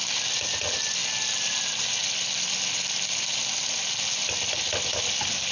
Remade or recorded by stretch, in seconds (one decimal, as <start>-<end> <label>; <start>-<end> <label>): 0.0-5.5 recorded